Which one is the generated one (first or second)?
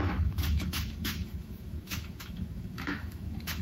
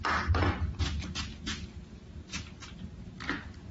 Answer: first